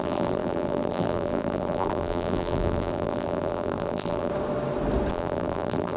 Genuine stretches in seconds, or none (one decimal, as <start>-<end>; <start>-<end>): 4.3-5.1